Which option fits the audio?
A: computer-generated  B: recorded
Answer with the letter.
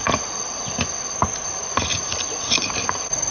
B